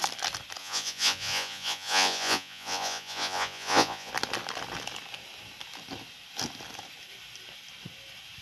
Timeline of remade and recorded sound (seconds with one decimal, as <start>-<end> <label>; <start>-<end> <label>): 0.0-0.6 recorded; 0.6-4.1 remade; 4.1-8.4 recorded